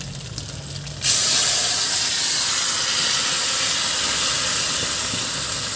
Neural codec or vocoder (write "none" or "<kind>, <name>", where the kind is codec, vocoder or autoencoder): none